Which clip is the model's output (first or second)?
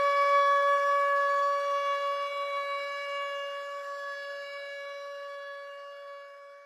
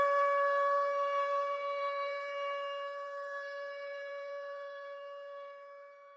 second